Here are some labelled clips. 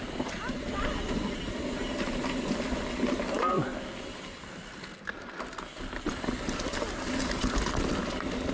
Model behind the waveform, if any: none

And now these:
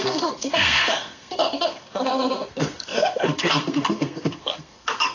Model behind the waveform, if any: codec, SNAC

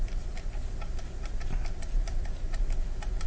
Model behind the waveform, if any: none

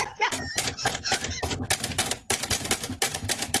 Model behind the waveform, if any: none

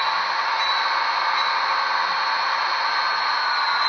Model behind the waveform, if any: none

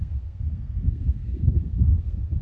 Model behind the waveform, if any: codec, SNAC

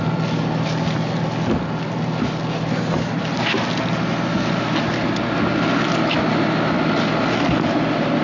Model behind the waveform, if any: none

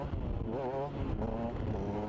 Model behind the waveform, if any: none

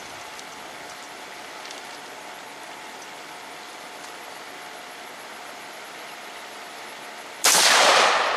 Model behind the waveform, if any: none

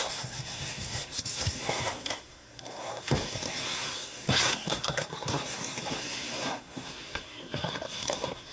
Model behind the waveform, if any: codec, SNAC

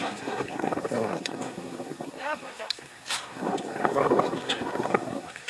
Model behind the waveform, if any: codec, SNAC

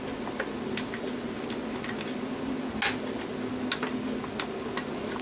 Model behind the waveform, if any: none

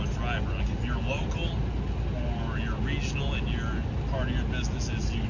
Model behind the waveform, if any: none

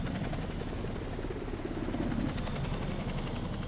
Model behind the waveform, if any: none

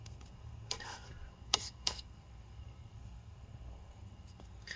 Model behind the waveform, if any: codec, SNAC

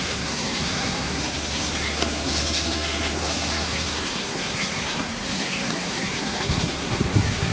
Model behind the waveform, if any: codec, SNAC